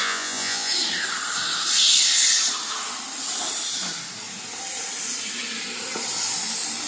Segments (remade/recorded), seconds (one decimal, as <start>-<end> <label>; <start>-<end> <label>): 0.0-0.7 remade; 0.7-6.9 recorded